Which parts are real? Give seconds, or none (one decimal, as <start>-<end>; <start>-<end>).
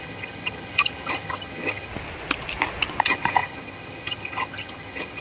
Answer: 1.9-3.0